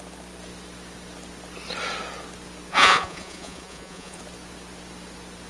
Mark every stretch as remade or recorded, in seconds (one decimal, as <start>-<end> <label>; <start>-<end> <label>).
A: 0.0-2.7 recorded; 2.7-4.2 remade; 4.2-5.5 recorded